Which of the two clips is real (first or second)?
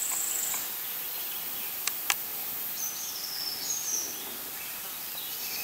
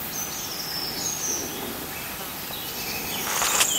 second